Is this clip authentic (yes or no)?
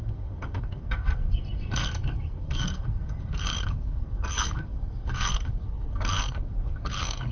no